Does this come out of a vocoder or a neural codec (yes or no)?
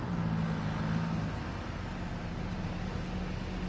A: no